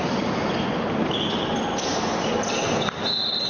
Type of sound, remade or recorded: recorded